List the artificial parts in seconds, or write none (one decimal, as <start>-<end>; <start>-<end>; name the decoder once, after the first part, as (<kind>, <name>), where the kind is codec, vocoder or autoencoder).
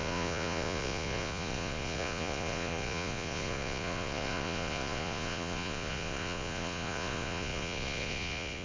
0.0-8.6 (vocoder, Vocos)